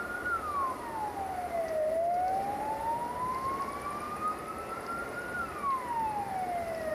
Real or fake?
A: real